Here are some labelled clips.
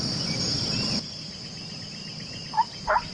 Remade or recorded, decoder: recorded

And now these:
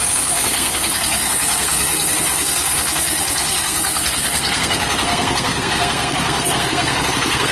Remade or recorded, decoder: remade, codec, SNAC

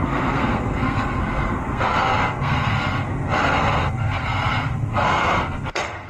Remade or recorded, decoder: remade, codec, SNAC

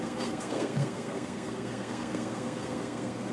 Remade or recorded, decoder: remade, codec, SNAC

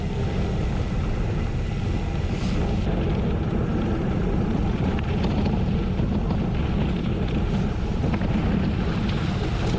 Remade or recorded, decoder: recorded